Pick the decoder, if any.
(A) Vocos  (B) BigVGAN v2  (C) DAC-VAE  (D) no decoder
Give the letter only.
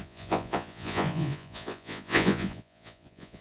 A